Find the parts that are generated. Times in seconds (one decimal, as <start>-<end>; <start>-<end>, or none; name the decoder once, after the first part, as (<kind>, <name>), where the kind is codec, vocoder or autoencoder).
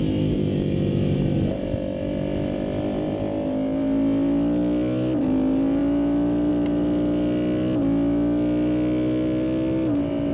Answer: none